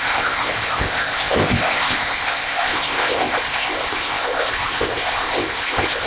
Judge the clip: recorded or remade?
remade